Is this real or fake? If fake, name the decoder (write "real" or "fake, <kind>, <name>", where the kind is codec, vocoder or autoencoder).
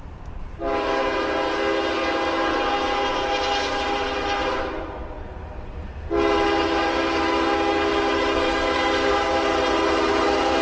real